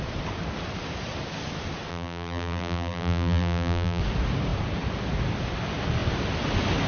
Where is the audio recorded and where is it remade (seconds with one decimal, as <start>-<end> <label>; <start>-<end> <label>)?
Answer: 0.0-1.9 recorded; 1.9-4.0 remade; 4.0-6.9 recorded